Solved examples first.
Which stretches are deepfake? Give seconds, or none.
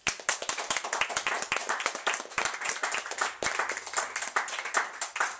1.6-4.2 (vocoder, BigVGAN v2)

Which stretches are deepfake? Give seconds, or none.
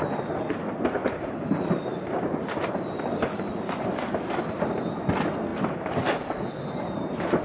1.0-3.4 (vocoder, BigVGAN v2)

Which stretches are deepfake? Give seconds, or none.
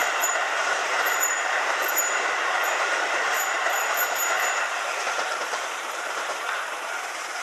0.0-2.6 (vocoder, BigVGAN v2); 5.0-7.4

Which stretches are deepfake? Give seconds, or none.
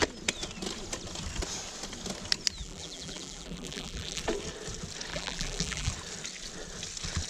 2.6-4.2 (vocoder, BigVGAN v2); 5.1-5.9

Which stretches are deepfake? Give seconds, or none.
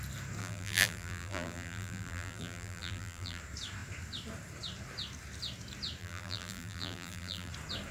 0.4-3.4 (vocoder, BigVGAN v2); 6.0-7.5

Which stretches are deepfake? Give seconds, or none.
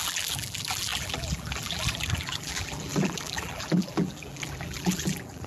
0.0-5.5 (vocoder, BigVGAN v2)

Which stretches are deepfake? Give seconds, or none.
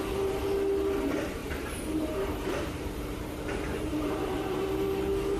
1.4-4.6 (vocoder, BigVGAN v2)